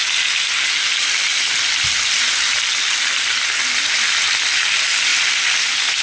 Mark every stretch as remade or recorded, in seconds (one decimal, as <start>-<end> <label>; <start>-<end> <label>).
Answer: 0.0-6.0 recorded